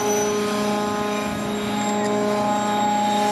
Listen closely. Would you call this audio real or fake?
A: real